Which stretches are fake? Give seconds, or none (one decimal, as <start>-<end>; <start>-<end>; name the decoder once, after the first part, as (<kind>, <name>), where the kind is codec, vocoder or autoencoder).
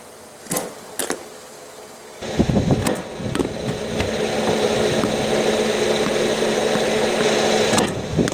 none